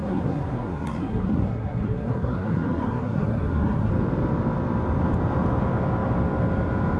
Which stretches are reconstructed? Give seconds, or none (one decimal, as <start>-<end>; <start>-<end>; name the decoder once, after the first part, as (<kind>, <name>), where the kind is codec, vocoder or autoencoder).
0.0-3.9 (codec, SNAC)